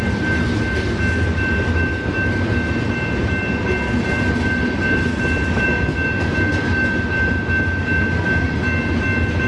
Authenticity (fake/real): real